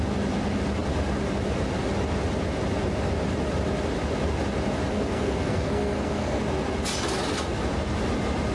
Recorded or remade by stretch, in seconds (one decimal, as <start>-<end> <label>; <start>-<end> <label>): 0.0-4.9 recorded; 4.9-6.4 remade; 6.4-8.5 recorded